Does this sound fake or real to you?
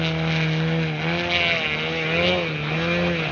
real